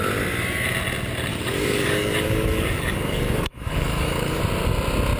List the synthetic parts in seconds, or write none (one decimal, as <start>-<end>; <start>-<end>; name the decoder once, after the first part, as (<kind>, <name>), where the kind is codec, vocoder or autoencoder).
1.3-4.4 (codec, DAC)